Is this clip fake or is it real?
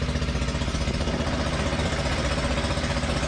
real